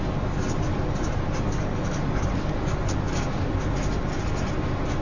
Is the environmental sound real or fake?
real